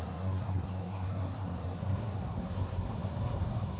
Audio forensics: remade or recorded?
remade